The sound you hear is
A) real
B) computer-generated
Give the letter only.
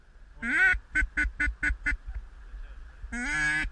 A